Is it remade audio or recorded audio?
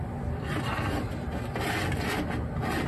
recorded